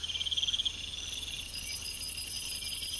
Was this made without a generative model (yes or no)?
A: yes